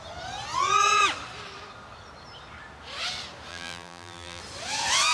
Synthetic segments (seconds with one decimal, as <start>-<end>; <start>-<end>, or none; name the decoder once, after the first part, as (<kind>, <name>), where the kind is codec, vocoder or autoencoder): 3.5-4.4 (vocoder, BigVGAN v2)